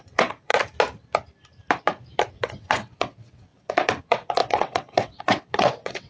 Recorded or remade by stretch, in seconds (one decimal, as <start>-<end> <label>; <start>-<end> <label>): 0.0-0.5 remade; 0.5-2.3 recorded; 2.3-6.1 remade